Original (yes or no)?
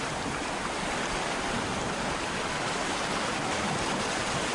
yes